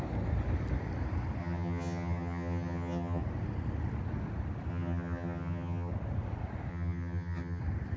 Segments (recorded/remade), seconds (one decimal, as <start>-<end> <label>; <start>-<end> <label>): 0.0-1.4 recorded; 1.4-3.2 remade; 3.2-4.7 recorded; 4.7-5.9 remade; 5.9-6.7 recorded; 6.7-7.6 remade; 7.6-8.0 recorded